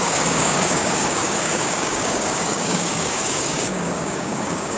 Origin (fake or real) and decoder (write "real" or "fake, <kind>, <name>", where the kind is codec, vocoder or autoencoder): fake, codec, DAC